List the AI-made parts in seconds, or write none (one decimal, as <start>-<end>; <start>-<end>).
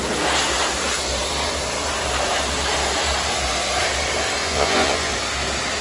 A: 4.4-5.1